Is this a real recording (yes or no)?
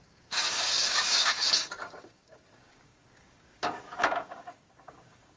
no